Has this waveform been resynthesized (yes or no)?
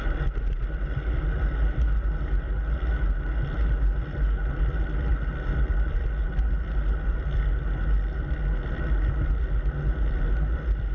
no